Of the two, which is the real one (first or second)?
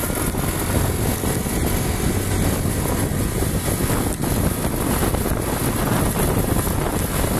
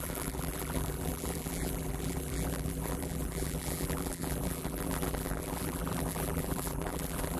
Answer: first